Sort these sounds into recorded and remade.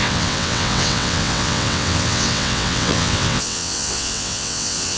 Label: remade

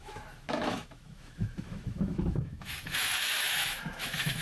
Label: remade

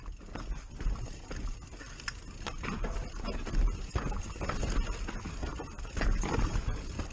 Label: recorded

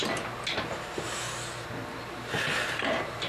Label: recorded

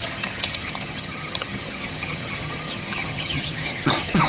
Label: remade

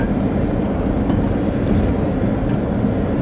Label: recorded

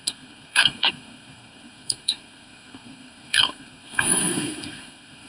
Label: remade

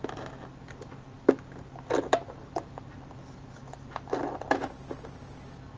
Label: recorded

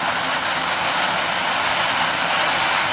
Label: recorded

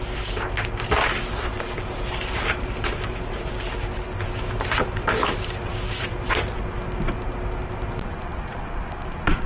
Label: recorded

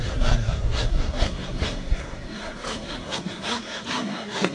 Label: remade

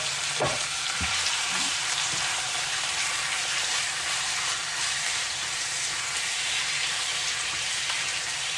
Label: remade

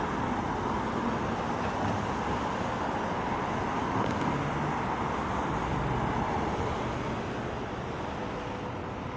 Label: recorded